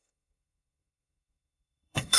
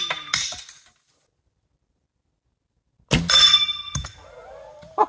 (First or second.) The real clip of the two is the second